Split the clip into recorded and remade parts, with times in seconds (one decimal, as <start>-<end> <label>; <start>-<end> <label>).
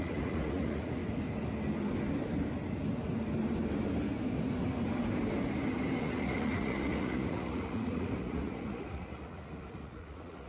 0.0-1.0 remade; 1.0-6.0 recorded; 6.0-10.5 remade